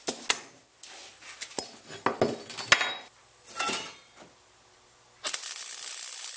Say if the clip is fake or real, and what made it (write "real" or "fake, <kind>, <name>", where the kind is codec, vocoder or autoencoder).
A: real